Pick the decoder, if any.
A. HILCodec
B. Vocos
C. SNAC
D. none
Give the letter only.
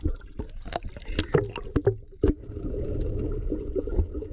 D